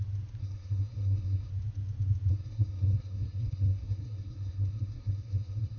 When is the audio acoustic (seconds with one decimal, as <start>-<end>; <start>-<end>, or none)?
0.0-0.4; 1.5-2.3